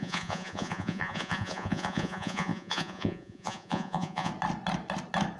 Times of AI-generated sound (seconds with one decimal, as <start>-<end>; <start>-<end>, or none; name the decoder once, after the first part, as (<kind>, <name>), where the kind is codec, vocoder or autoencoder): 0.0-4.3 (vocoder, Vocos)